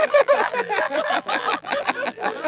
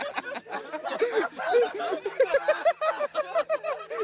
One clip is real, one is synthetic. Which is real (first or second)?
second